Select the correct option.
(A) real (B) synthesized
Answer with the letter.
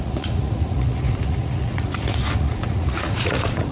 B